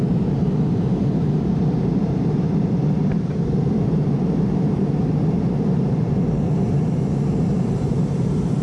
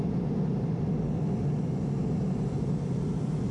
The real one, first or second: second